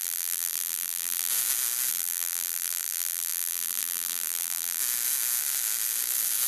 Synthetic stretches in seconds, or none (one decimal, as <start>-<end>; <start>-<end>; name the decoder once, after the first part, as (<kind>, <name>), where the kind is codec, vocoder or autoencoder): 0.0-1.3 (vocoder, BigVGAN v2); 1.9-4.8

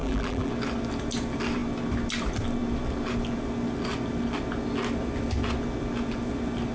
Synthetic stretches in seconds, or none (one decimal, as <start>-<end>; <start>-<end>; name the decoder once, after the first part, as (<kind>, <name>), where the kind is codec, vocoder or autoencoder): 0.0-0.5 (vocoder, BigVGAN v2)

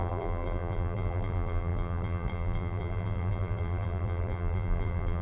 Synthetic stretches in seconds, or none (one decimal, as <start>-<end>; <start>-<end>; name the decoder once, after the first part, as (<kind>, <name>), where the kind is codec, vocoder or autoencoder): 0.0-5.2 (vocoder, BigVGAN v2)

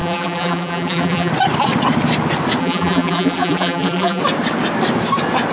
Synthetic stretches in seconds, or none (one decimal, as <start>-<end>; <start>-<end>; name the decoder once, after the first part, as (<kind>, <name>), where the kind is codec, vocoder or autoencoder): 0.0-1.3 (vocoder, BigVGAN v2); 2.6-4.2

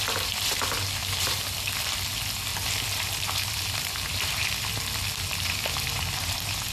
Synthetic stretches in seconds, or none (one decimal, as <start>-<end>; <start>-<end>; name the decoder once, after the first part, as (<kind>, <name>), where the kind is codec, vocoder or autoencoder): 1.0-1.9 (vocoder, BigVGAN v2); 2.5-4.7

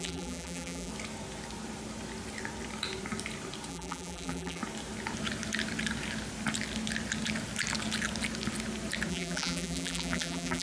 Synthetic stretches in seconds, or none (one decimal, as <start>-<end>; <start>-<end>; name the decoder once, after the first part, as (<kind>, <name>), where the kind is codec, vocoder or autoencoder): 0.0-0.9 (vocoder, BigVGAN v2); 3.7-4.6; 9.1-10.6

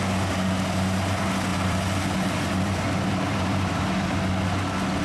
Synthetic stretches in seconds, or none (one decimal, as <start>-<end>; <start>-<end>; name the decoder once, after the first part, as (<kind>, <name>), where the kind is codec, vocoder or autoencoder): 1.5-3.8 (vocoder, BigVGAN v2)

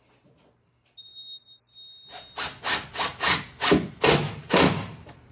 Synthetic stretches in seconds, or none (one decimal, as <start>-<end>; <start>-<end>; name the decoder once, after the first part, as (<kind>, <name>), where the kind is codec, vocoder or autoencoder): 0.0-1.1 (vocoder, BigVGAN v2); 4.3-5.3